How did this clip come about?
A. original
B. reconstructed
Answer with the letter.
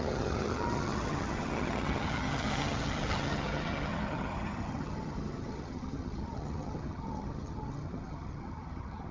B